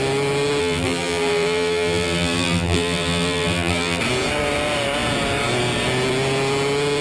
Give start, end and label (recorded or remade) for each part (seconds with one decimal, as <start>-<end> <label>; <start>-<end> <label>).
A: 0.0-0.6 recorded; 0.6-4.0 remade; 4.0-7.0 recorded